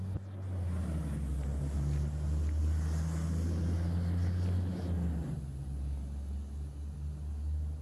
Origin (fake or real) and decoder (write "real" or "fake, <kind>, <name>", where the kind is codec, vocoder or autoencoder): real